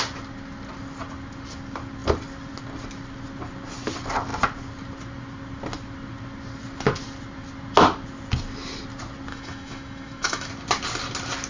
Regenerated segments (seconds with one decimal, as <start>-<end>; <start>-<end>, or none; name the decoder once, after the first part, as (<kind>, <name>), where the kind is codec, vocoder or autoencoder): 9.3-10.5 (autoencoder, DAC-VAE)